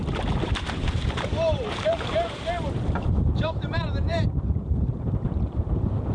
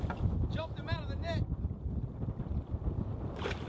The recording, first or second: second